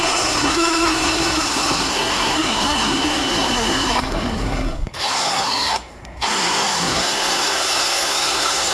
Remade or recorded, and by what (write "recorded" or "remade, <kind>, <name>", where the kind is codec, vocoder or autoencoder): remade, codec, SNAC